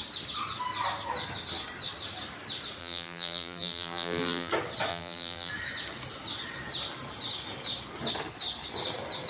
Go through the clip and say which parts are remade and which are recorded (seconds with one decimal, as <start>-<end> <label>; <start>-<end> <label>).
0.0-2.8 recorded; 2.8-4.5 remade; 4.5-4.9 recorded; 4.9-5.5 remade; 5.5-9.3 recorded